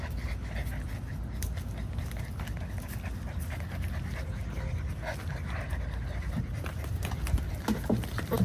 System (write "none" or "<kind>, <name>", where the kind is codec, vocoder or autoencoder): none